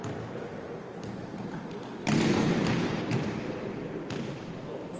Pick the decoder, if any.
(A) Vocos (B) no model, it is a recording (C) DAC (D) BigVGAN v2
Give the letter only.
B